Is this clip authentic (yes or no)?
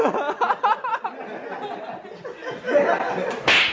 yes